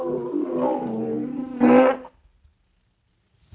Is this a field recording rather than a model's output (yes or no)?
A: yes